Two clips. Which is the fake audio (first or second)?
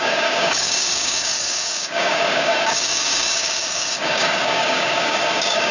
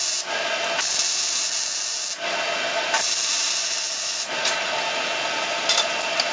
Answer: first